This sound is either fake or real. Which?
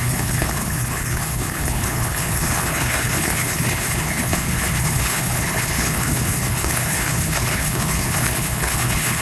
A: fake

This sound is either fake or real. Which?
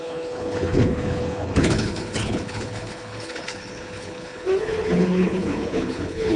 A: fake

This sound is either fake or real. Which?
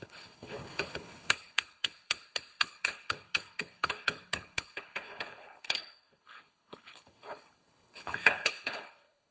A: fake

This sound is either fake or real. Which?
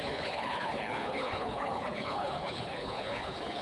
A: fake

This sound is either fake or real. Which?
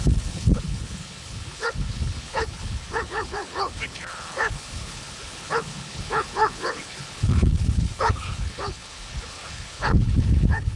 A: fake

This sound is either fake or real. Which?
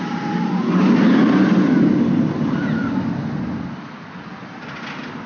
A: real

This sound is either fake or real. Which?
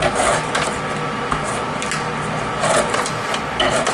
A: real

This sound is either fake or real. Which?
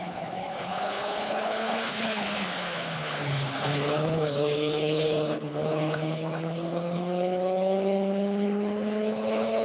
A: fake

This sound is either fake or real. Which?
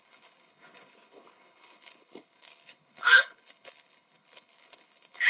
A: fake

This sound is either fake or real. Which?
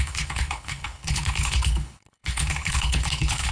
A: fake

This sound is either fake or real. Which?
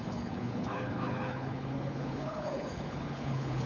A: fake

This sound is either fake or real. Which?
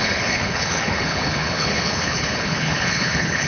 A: fake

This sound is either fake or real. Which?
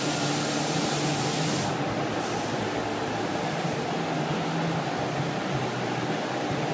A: real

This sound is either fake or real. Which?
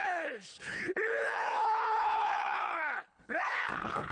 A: fake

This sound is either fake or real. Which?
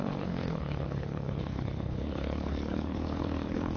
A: fake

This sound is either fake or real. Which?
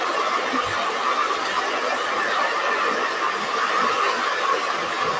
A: real